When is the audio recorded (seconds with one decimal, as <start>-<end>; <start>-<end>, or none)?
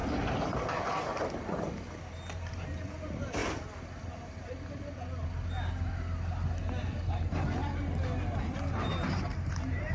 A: 0.0-2.4; 3.4-8.4